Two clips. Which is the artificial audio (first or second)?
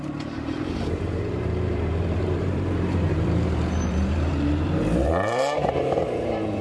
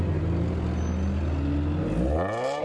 first